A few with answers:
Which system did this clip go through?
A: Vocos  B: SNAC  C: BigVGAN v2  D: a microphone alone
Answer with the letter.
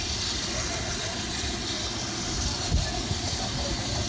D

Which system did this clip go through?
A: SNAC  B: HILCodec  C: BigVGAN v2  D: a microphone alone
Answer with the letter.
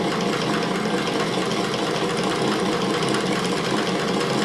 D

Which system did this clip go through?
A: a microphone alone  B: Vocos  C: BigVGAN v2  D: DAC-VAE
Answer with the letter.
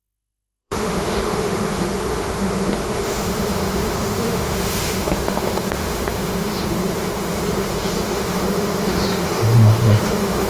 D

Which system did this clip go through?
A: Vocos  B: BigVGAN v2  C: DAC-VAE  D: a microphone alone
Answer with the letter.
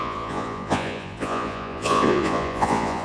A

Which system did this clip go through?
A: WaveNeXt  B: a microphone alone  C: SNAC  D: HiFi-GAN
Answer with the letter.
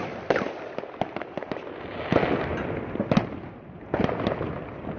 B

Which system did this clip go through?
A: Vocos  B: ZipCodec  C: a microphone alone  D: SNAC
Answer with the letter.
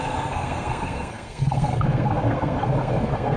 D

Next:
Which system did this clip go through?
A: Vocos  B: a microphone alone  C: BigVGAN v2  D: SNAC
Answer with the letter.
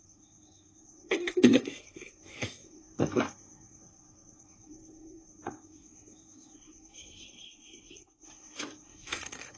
D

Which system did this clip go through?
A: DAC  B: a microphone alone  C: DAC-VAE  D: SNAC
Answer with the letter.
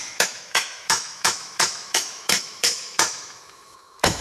C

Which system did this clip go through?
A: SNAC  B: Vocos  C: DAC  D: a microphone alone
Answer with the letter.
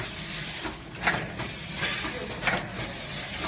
D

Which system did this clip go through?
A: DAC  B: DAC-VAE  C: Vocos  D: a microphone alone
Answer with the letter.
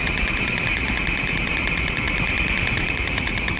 C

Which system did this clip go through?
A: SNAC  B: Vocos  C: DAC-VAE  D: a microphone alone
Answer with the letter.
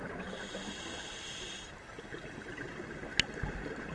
D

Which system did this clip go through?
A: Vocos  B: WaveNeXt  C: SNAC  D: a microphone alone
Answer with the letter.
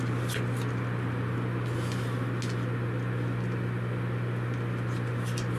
D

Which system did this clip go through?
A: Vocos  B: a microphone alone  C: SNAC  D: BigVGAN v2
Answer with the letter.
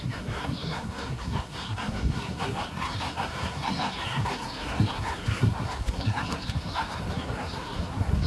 C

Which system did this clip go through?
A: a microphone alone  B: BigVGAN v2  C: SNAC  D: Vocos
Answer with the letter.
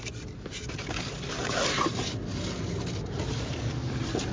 A